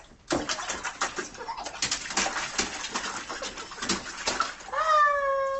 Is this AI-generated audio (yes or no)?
no